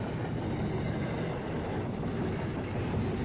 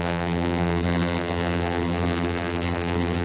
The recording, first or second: first